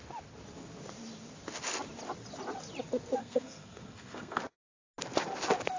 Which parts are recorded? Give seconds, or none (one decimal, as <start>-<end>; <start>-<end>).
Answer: 0.0-3.2; 4.4-5.8